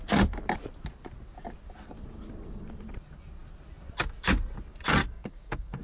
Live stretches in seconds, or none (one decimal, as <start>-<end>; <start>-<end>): 0.0-5.0